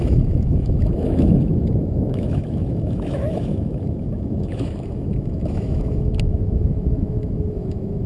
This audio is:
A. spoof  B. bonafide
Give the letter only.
A